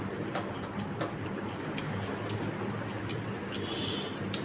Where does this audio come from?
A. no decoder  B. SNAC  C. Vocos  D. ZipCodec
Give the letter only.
A